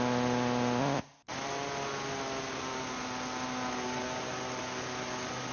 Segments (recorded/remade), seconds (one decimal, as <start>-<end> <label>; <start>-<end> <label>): 0.0-5.5 recorded